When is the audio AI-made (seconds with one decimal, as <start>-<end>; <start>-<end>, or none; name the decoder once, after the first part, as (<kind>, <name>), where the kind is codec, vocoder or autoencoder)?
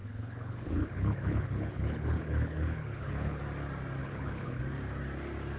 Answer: 0.0-3.4 (codec, HILCodec); 4.0-4.6